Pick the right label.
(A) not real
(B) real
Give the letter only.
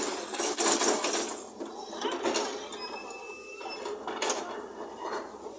B